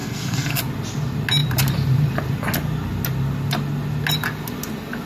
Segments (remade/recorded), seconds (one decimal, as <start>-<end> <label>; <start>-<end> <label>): 0.0-0.6 remade; 0.6-5.1 recorded